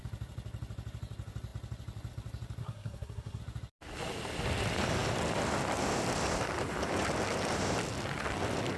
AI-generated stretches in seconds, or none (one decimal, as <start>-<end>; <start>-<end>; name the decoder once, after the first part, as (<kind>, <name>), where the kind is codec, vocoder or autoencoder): 2.6-3.4 (codec, SNAC)